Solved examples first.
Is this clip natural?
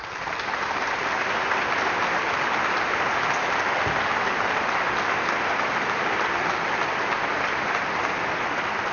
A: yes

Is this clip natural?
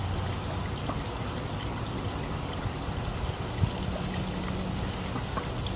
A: yes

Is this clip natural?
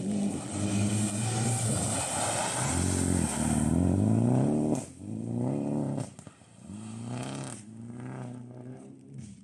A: yes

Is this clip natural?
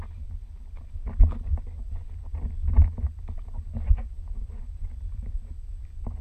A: yes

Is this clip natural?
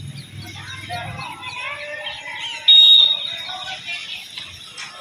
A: yes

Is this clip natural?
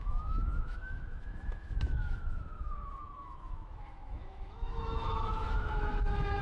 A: no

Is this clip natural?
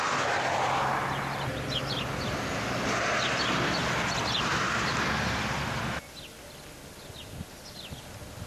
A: yes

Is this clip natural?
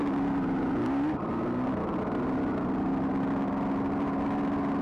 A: yes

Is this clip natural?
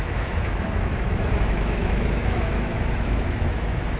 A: no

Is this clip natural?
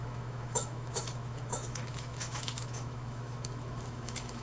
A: no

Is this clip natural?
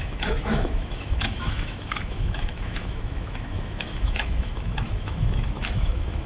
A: no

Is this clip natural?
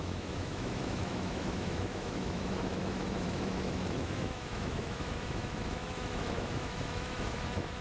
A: no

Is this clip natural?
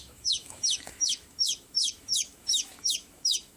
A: no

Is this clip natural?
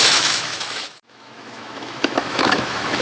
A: no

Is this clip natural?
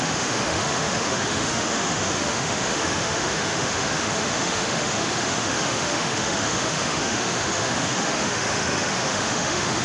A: no